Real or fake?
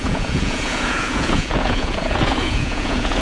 fake